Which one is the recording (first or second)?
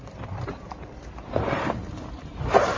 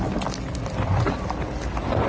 second